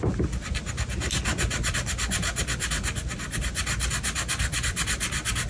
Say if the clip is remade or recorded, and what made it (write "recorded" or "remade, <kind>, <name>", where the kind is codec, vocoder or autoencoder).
recorded